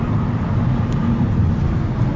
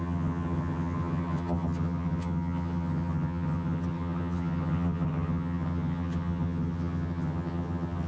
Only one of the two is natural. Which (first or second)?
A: first